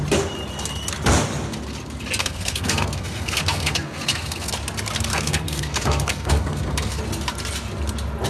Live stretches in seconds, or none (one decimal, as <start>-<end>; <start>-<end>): 0.0-2.2; 4.5-5.1; 7.0-8.3